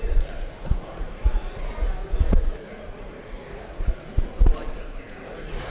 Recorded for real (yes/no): no